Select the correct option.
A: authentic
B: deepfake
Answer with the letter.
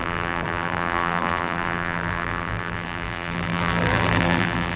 B